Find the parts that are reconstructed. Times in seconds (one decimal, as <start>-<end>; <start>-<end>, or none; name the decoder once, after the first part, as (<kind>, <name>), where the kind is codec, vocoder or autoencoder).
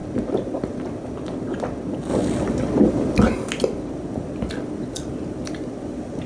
none